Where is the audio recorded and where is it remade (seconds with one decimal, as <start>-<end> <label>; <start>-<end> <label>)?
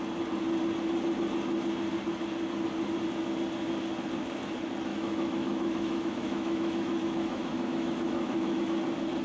0.0-4.9 recorded; 4.9-8.6 remade; 8.6-9.2 recorded